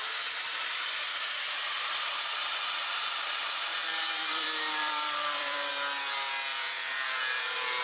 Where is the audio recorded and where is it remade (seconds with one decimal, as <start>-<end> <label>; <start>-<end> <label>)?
0.0-3.8 recorded; 3.8-5.7 remade; 5.7-6.5 recorded; 6.5-7.8 remade